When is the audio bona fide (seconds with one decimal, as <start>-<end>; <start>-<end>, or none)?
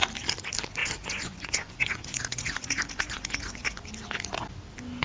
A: 0.0-0.8; 3.8-5.0